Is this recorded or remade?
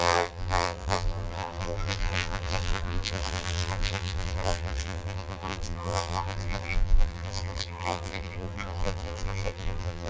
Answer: remade